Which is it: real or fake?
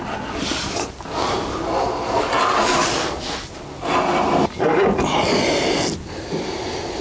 real